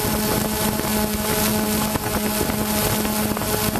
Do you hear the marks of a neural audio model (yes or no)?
no